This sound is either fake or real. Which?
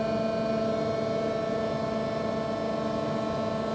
real